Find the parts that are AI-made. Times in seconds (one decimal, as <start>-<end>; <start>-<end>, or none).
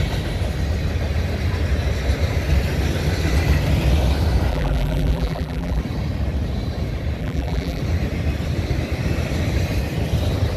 4.5-5.8; 7.2-7.8